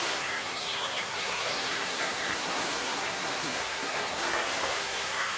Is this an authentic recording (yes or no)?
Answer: no